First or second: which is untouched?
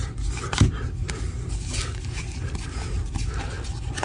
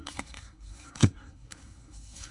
first